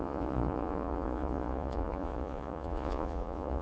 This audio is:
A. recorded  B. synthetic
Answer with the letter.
B